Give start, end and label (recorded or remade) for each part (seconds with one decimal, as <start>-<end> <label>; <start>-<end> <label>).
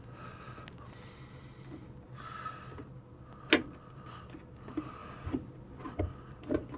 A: 0.0-6.8 recorded